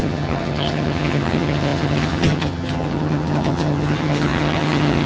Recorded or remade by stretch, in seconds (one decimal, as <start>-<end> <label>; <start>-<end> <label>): 0.0-5.1 remade